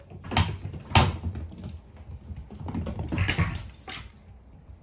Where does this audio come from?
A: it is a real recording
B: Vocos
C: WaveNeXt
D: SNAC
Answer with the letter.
A